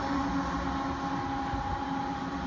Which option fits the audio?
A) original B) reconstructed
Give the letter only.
A